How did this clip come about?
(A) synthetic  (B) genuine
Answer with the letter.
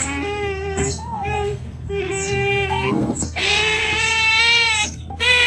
A